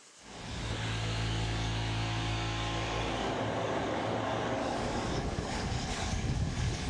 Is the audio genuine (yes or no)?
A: no